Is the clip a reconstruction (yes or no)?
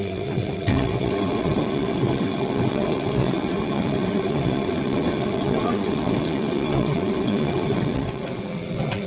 yes